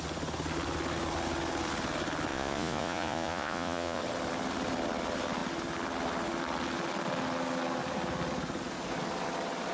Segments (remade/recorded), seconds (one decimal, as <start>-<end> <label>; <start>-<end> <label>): 0.0-2.3 recorded; 2.3-4.0 remade; 4.0-9.7 recorded